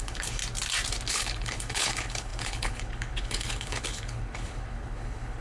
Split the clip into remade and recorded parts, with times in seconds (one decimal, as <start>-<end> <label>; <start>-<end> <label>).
0.0-0.4 remade; 0.4-1.1 recorded; 1.1-5.4 remade